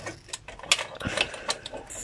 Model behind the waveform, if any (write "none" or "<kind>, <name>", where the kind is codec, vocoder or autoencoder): none